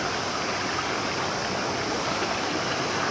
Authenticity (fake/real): real